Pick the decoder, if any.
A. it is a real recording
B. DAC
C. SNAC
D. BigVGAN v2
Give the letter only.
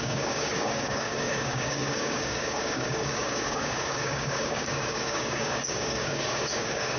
B